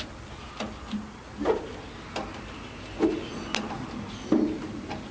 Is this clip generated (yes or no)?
no